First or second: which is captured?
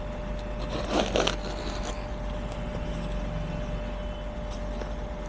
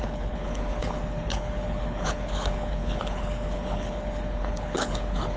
first